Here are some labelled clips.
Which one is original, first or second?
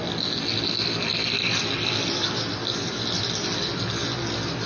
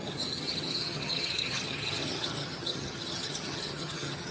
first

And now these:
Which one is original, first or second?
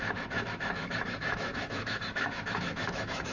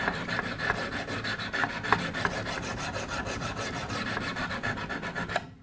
second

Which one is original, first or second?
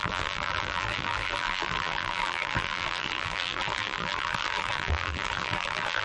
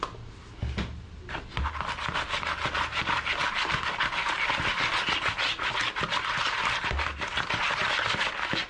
second